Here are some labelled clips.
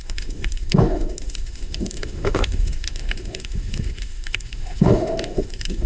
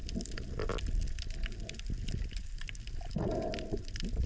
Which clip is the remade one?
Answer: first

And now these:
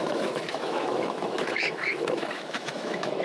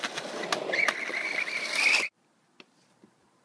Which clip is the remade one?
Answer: first